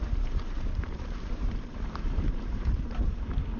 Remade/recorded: remade